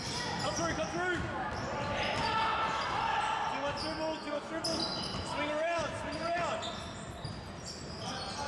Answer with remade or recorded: recorded